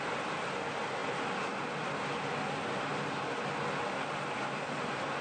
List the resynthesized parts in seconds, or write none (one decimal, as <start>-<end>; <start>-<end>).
none